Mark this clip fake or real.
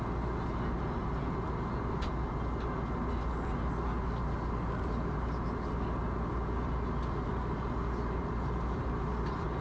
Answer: real